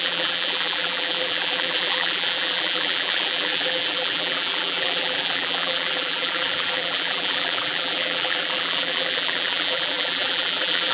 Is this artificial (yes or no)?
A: yes